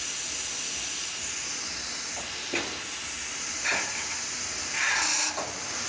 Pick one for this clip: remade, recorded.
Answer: recorded